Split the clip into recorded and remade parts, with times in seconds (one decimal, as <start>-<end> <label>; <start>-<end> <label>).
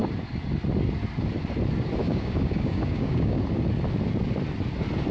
0.0-2.0 recorded; 2.0-3.4 remade; 3.4-5.1 recorded